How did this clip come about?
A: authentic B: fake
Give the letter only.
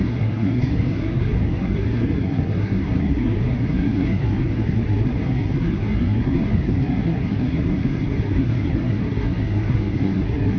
B